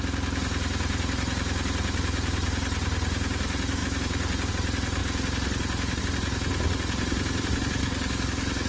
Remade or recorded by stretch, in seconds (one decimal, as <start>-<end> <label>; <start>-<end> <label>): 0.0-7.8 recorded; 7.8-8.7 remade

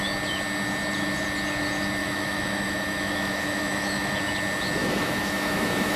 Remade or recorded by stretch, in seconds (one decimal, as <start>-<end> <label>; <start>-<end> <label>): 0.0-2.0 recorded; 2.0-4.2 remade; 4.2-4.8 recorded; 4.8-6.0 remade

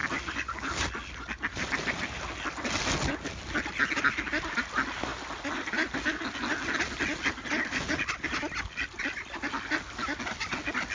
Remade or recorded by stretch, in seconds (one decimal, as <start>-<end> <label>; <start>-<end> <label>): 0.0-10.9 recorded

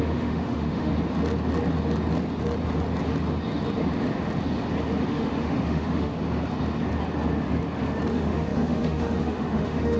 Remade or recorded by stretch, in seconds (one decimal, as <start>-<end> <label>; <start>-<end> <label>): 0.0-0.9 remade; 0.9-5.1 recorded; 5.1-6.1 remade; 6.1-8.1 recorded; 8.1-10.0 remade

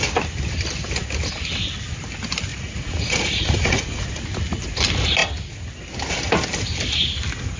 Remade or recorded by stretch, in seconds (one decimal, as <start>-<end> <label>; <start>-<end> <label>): 0.0-2.5 recorded; 2.5-4.1 remade; 4.1-7.6 recorded

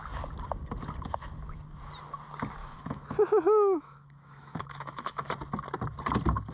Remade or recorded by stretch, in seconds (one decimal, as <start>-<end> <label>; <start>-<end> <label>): 0.0-2.6 recorded; 2.6-5.3 remade; 5.3-6.5 recorded